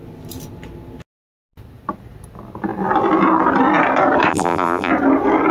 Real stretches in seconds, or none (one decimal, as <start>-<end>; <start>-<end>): 0.0-4.3; 4.9-5.5